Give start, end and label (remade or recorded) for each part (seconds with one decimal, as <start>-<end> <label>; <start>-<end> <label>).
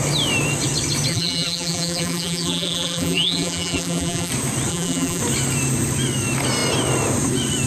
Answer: 0.0-1.1 recorded; 1.1-4.3 remade; 4.3-4.7 recorded; 4.7-5.2 remade; 5.2-7.7 recorded